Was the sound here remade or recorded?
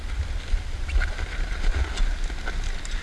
recorded